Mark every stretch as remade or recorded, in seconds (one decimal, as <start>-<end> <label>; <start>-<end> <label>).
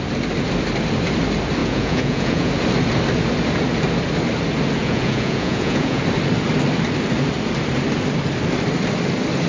0.0-1.6 recorded; 1.6-2.5 remade; 2.5-4.8 recorded; 4.8-6.0 remade; 6.0-9.5 recorded